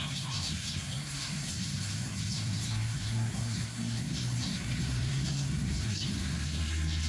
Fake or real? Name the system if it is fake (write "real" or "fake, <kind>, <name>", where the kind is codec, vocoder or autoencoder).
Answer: fake, codec, SNAC